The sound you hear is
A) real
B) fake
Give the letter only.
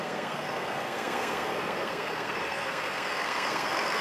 B